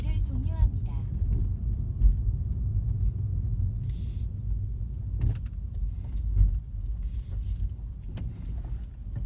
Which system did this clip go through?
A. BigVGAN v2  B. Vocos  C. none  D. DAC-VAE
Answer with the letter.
C